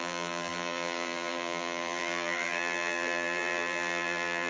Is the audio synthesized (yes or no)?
yes